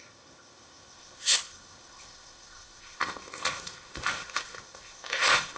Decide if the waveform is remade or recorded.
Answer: remade